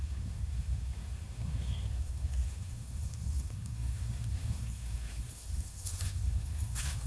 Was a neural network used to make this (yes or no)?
yes